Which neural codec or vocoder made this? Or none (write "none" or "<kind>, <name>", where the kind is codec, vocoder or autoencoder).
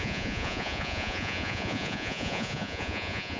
vocoder, Vocos